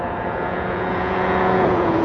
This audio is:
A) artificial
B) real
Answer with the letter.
A